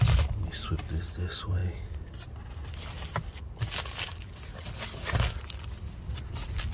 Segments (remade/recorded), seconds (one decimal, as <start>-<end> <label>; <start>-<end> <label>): 0.0-6.7 recorded